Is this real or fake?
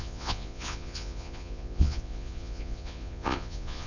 fake